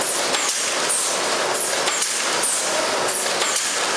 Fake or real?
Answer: real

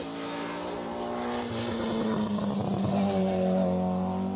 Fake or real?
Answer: real